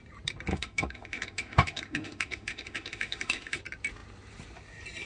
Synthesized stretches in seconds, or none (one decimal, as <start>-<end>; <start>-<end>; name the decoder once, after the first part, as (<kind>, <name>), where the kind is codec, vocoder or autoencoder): 0.5-3.6 (autoencoder, DAC-VAE)